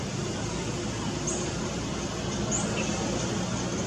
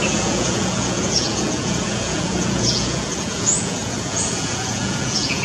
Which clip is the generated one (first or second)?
second